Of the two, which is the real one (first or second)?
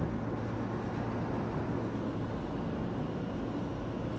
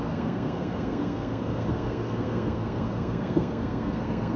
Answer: first